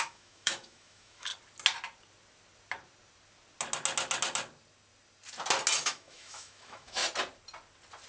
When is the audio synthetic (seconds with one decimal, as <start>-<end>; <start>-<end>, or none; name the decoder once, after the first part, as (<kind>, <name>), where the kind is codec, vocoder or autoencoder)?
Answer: 0.0-1.3 (autoencoder, DAC-VAE); 5.8-7.0